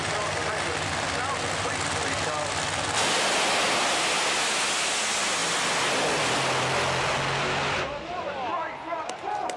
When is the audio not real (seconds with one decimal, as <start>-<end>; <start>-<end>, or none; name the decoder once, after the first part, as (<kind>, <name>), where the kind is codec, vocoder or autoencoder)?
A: none